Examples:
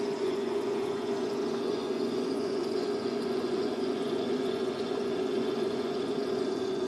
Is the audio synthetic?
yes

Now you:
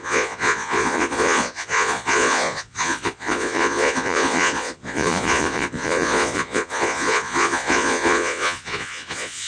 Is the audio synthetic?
yes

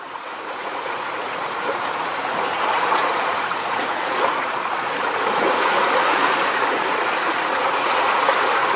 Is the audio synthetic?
yes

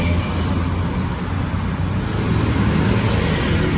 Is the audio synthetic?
no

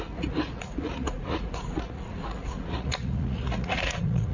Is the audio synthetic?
yes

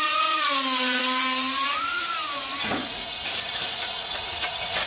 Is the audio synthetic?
yes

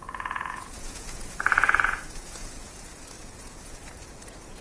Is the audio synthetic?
yes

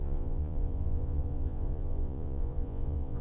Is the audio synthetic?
yes